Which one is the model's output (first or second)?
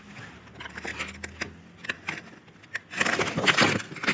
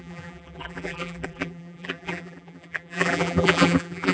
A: second